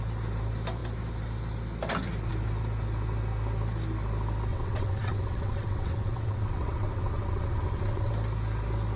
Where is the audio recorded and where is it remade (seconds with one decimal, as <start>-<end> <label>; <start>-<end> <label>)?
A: 0.0-4.5 recorded; 4.5-8.1 remade; 8.1-9.0 recorded